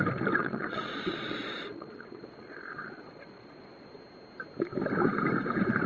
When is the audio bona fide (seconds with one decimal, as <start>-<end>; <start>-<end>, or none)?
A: 0.0-0.4; 3.9-5.9